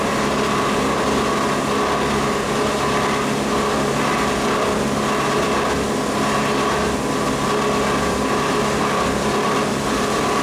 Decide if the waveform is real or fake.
real